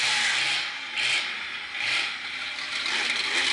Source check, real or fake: real